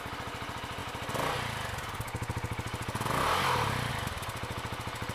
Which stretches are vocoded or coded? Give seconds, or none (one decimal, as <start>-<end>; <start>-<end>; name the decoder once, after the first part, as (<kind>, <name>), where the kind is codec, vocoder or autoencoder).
none